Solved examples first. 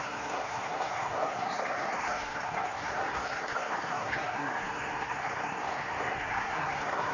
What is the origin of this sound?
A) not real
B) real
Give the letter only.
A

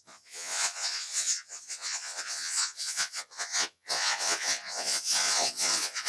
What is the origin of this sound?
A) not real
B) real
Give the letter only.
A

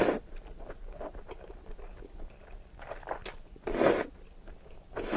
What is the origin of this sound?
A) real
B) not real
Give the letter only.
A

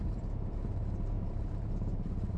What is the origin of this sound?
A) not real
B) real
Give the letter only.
A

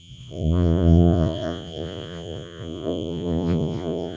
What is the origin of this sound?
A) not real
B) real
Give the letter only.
A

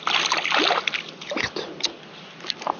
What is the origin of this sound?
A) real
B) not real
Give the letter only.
A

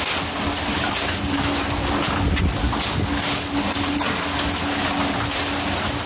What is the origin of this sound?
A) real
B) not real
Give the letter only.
A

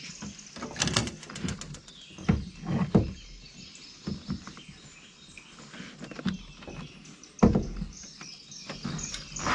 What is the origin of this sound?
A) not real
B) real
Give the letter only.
B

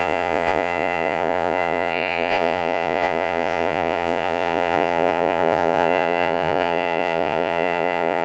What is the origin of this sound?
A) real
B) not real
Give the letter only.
B